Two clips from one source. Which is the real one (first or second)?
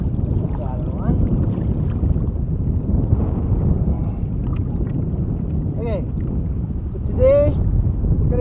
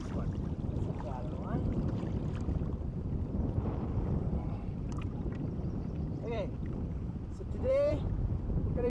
first